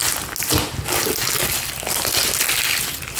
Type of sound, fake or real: real